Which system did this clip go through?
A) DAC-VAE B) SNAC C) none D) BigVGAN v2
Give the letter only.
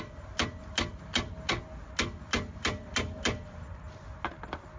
C